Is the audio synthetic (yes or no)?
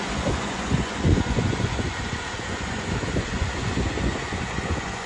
yes